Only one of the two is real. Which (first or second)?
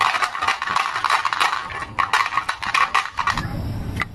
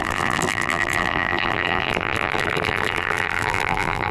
first